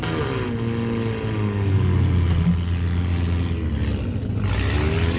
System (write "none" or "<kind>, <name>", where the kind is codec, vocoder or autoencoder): none